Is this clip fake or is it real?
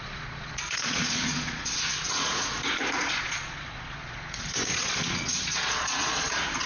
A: fake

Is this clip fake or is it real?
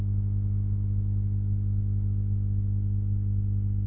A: real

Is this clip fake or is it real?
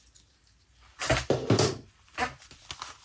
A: real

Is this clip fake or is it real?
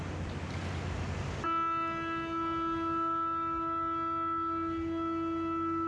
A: real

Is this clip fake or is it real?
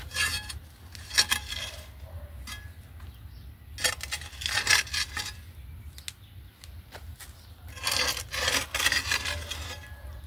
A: real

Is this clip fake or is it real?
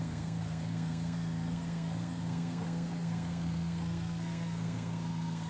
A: fake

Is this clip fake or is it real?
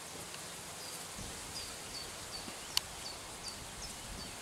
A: real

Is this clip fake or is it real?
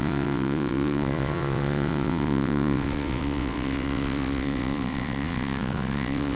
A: fake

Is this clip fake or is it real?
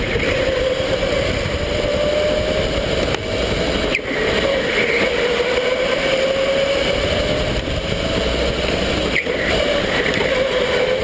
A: real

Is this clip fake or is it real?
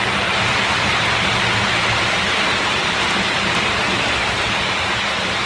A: real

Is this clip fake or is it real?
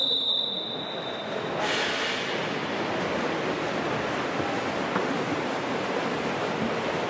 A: real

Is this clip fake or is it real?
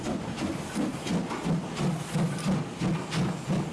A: real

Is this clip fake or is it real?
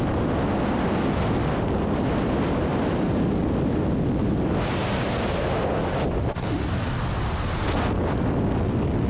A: real